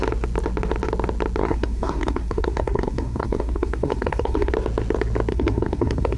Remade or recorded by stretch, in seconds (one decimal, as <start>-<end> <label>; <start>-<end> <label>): 0.0-1.4 recorded; 1.4-4.5 remade; 4.5-5.3 recorded; 5.3-6.2 remade